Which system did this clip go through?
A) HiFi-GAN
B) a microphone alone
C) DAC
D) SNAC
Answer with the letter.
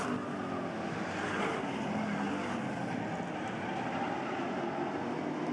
B